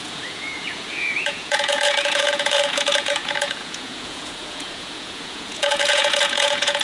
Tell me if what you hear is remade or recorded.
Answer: remade